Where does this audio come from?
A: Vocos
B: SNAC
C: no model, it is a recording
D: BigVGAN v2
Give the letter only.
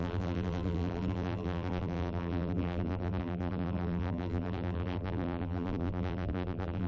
D